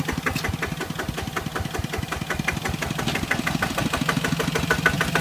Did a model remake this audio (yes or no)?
no